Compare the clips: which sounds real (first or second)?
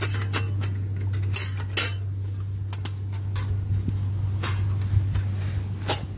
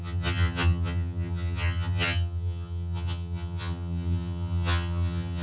first